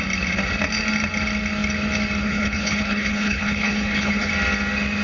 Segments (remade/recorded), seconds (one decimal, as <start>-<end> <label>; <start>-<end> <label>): 0.0-2.2 recorded; 2.2-4.3 remade; 4.3-5.0 recorded